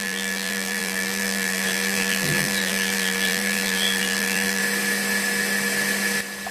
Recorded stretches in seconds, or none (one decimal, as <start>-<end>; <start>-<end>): 4.6-6.5